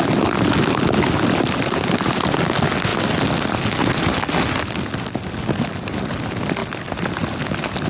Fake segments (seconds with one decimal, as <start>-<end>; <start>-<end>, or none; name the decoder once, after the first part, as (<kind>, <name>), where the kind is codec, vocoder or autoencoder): none